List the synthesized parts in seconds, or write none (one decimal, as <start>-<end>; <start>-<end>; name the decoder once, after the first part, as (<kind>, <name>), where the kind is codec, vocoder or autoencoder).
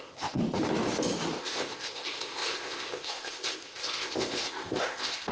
0.0-0.4 (codec, ZipCodec); 1.4-5.3